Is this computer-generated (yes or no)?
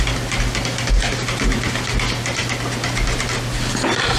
no